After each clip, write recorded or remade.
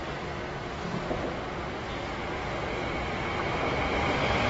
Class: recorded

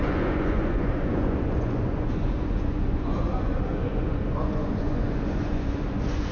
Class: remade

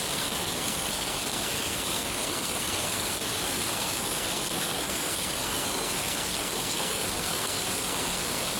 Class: remade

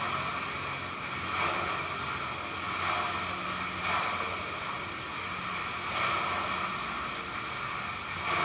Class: recorded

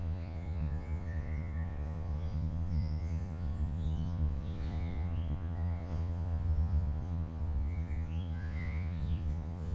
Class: remade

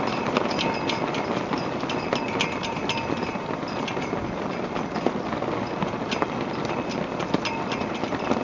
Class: recorded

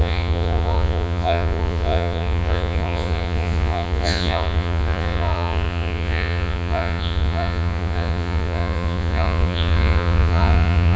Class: remade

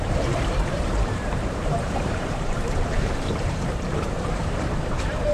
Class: remade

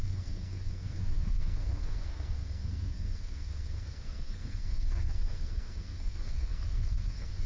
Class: remade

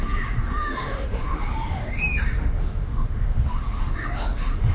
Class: remade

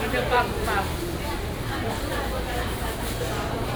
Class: recorded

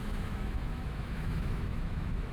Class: remade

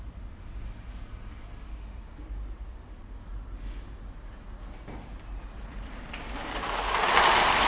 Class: recorded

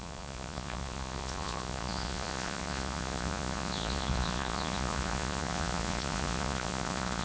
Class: remade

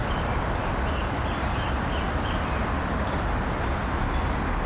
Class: recorded